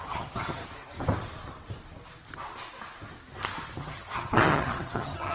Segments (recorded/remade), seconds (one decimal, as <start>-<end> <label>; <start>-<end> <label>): 0.0-0.6 remade; 0.6-3.8 recorded; 3.8-5.3 remade